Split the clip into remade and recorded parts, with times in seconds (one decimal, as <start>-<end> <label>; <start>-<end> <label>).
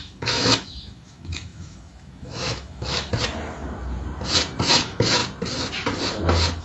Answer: 0.0-3.1 remade; 3.1-4.7 recorded; 4.7-5.2 remade; 5.2-6.6 recorded